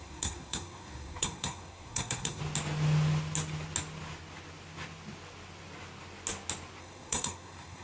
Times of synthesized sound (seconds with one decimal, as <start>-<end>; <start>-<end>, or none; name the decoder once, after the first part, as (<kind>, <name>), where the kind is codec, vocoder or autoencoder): 0.0-2.4 (codec, SNAC); 6.8-7.8